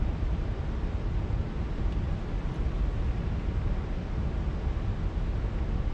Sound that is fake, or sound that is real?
real